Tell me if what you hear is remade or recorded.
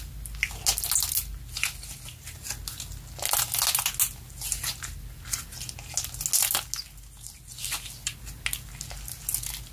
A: recorded